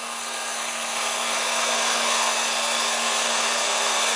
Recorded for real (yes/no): no